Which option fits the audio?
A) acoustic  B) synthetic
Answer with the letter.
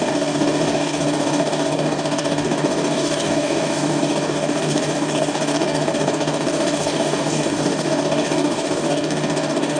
B